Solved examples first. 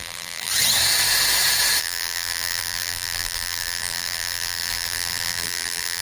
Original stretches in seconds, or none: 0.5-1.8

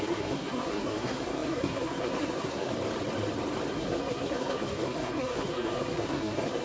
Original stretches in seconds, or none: 2.7-3.7

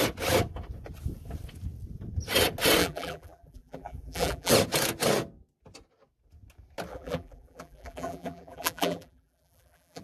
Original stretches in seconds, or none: 0.0-2.8; 4.5-6.9